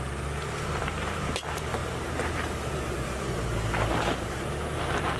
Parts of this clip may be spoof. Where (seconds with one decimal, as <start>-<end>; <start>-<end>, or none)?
0.8-1.4; 1.8-4.5